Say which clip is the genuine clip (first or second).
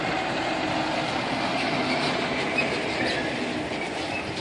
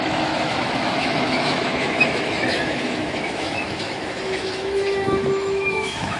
first